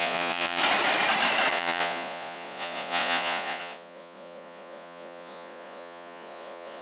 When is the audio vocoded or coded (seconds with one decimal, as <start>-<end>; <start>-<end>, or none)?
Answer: 0.0-0.6; 1.5-6.8